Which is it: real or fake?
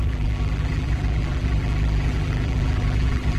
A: fake